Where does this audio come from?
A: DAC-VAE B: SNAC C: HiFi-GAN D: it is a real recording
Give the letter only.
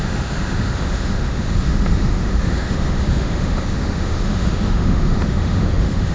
A